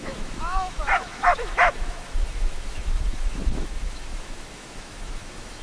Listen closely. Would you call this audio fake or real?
fake